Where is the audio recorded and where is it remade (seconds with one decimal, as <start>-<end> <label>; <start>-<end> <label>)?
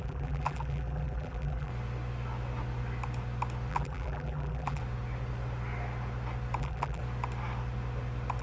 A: 0.0-1.7 remade; 1.7-3.7 recorded; 3.7-4.8 remade; 4.8-6.6 recorded; 6.6-7.0 remade; 7.0-8.4 recorded